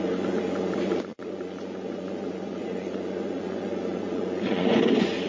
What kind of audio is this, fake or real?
fake